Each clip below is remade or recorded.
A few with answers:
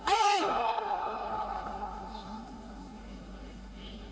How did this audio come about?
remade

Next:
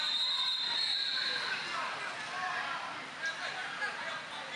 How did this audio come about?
recorded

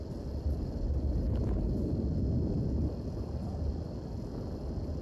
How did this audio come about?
recorded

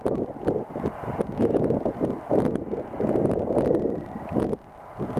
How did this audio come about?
recorded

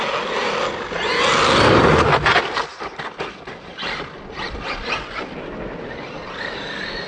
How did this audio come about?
recorded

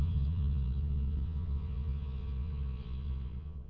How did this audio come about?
remade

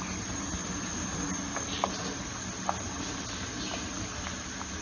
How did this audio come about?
recorded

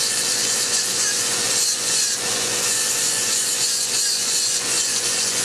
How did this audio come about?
remade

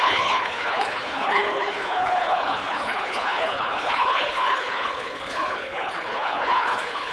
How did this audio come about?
remade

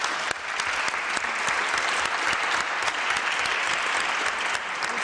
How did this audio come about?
recorded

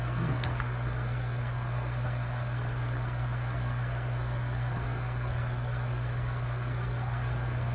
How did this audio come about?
remade